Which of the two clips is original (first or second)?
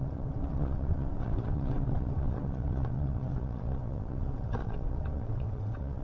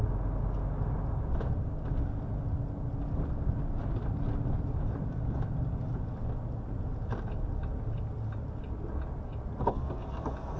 second